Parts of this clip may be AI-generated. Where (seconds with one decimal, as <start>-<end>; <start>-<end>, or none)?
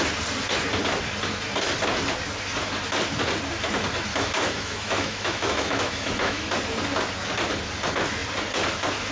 4.1-6.5